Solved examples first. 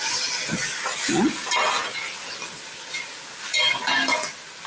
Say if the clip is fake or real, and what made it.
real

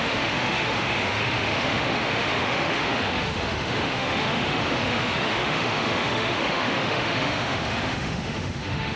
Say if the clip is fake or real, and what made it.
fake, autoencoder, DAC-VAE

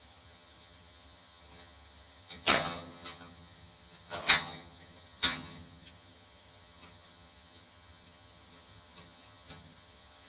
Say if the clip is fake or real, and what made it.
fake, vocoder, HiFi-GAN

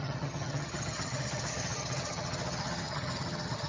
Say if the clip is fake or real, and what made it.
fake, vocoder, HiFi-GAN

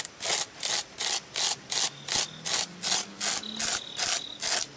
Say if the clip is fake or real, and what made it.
real